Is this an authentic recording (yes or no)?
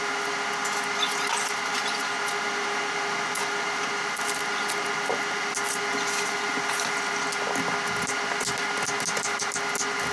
yes